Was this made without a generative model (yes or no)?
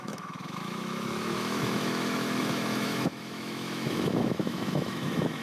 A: no